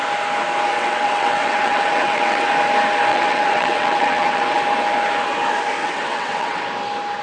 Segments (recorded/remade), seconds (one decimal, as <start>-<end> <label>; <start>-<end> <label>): 0.0-0.7 recorded; 0.7-2.5 remade; 2.5-3.1 recorded; 3.1-4.6 remade; 4.6-5.8 recorded; 5.8-6.6 remade; 6.6-7.2 recorded